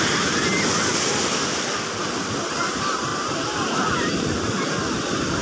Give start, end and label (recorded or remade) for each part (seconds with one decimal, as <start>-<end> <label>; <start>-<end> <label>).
0.0-0.5 remade; 0.5-1.2 recorded; 1.2-2.0 remade; 2.0-2.7 recorded; 2.7-3.1 remade; 3.1-3.7 recorded; 3.7-5.4 remade